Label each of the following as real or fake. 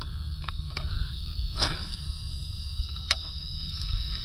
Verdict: fake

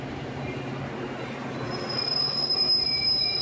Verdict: real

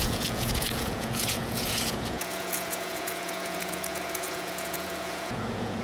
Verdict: fake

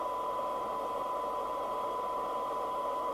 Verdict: real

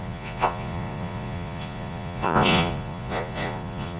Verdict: fake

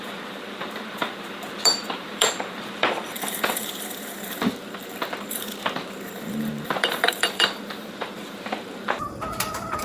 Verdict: fake